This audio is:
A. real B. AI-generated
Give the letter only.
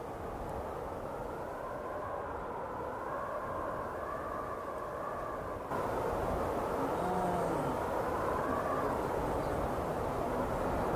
A